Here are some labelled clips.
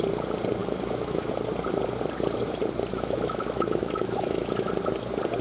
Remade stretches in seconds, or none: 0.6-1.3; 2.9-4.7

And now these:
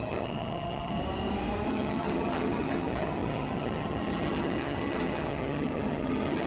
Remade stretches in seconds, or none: 0.0-1.0; 1.7-6.5

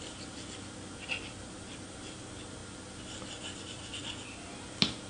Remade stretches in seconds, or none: none

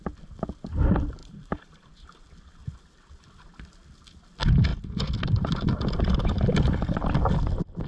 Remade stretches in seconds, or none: 1.2-1.9

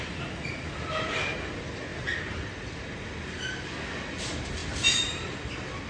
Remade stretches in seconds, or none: none